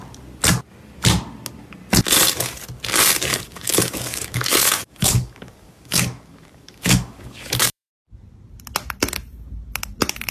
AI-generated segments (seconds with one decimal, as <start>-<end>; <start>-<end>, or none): 3.3-7.9